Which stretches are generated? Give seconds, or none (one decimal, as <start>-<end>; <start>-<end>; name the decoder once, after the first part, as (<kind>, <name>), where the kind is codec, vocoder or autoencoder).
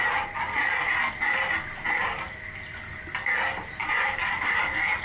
0.6-1.5 (vocoder, BigVGAN v2); 3.8-4.6